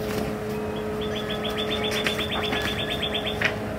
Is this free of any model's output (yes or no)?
yes